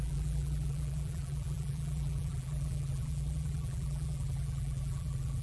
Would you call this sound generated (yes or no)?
yes